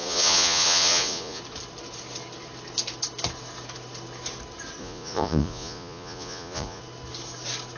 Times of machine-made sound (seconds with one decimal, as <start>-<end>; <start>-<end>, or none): 0.0-1.4; 4.8-6.8